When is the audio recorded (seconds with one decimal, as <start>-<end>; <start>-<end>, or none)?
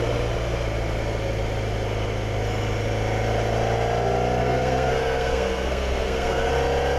0.0-4.4; 6.5-7.0